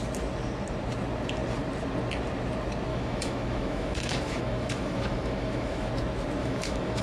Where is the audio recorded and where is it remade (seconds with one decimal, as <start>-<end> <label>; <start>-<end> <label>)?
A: 0.0-2.9 recorded; 2.9-5.9 remade; 5.9-6.4 recorded; 6.4-7.0 remade